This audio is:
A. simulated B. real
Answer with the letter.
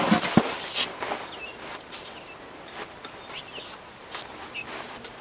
B